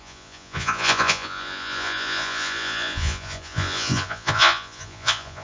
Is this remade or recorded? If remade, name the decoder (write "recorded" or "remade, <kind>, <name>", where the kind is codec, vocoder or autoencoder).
remade, vocoder, Vocos